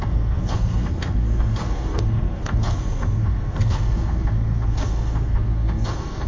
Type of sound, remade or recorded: remade